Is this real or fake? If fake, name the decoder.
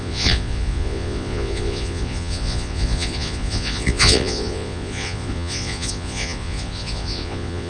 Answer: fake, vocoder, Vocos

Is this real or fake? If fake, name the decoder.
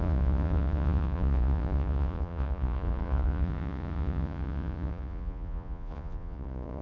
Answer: fake, vocoder, Vocos